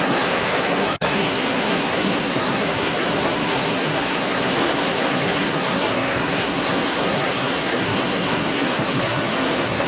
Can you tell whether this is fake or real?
fake